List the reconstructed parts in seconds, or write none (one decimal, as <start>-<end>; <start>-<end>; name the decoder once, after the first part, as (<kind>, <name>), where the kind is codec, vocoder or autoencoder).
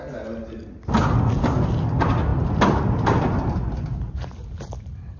none